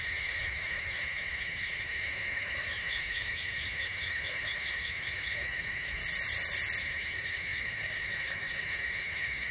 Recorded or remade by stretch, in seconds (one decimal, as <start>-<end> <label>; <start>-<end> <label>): 0.0-6.0 remade; 6.0-6.8 recorded; 6.8-9.5 remade